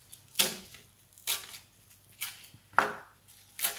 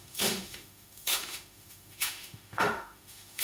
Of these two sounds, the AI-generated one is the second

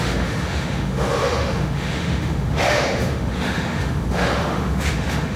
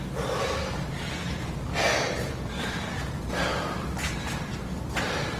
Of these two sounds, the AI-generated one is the first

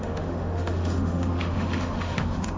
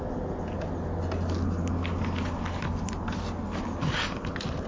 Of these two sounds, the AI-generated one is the first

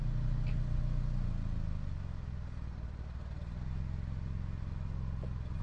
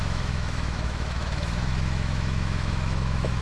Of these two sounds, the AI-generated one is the second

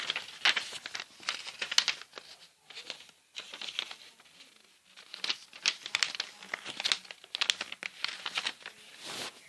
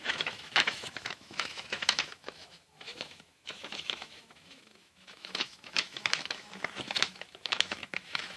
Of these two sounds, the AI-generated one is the second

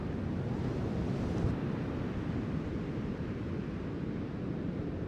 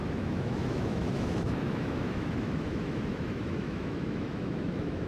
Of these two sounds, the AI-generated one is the second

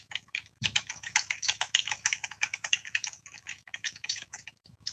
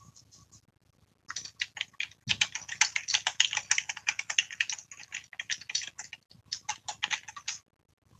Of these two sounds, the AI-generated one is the first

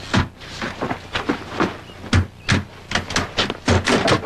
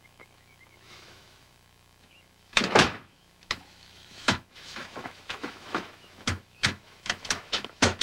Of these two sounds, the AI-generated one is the second